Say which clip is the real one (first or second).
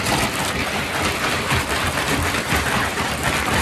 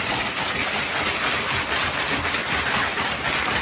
second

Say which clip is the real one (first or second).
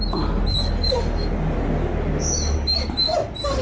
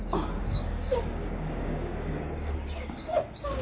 first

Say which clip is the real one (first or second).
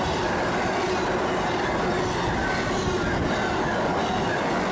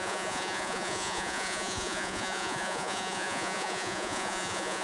first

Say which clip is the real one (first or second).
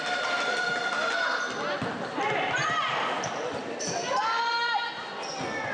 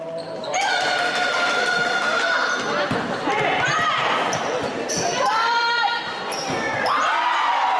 first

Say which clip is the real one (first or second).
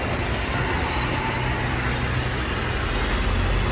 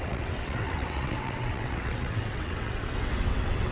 first